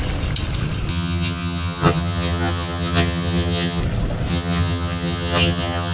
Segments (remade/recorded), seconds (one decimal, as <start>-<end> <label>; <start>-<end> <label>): 0.0-0.9 recorded; 0.9-3.8 remade; 3.8-4.3 recorded; 4.3-5.9 remade

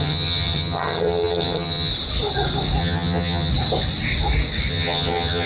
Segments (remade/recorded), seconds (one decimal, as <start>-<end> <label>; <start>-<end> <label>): 0.0-1.9 remade; 1.9-2.8 recorded; 2.8-3.5 remade; 3.5-4.7 recorded; 4.7-5.5 remade